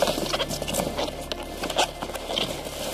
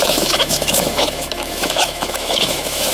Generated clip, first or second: second